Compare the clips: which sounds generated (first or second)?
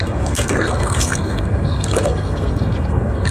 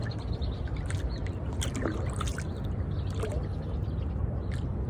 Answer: first